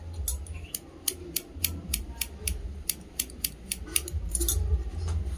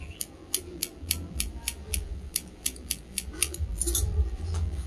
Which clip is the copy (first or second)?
second